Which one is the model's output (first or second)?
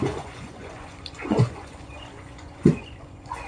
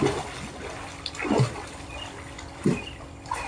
first